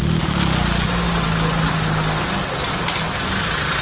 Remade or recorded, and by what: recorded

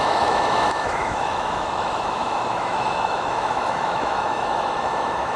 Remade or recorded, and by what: remade, autoencoder, DAC-VAE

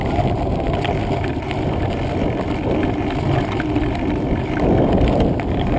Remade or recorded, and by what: recorded